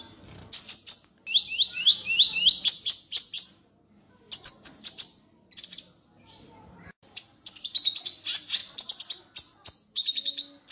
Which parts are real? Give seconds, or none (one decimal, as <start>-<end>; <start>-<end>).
0.0-10.7